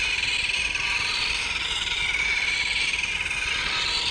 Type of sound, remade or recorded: recorded